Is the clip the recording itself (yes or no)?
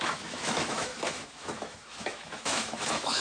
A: no